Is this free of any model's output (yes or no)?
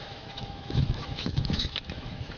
no